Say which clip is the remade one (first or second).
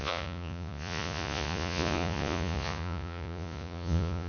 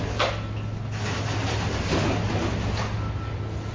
first